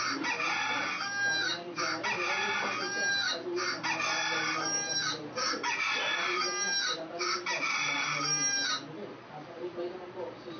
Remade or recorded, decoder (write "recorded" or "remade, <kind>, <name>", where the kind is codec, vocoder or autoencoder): recorded